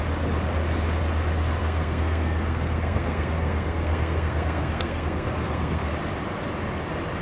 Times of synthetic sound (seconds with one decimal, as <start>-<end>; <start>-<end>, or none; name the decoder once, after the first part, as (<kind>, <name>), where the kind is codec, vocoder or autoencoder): 1.6-5.9 (codec, SNAC)